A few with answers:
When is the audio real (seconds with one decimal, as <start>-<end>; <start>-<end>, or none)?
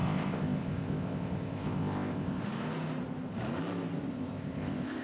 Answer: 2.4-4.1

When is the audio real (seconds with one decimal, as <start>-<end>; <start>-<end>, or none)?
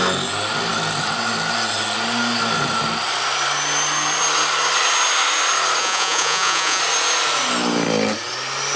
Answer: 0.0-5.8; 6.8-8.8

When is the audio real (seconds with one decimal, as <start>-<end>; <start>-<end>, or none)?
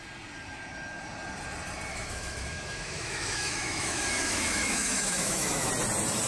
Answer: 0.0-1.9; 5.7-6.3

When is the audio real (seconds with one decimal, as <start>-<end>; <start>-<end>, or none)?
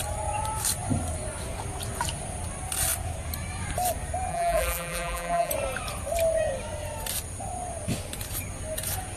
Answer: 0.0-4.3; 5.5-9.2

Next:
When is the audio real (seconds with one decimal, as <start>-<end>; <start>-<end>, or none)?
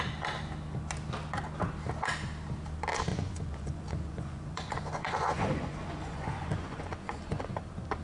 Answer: 0.0-3.1; 7.6-8.0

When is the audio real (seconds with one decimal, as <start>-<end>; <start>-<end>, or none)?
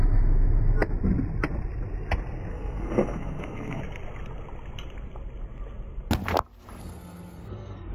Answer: 0.0-2.5; 3.8-6.8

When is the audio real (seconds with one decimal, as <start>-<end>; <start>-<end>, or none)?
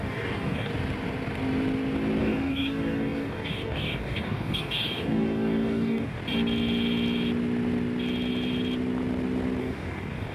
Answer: 0.7-2.2; 6.2-9.6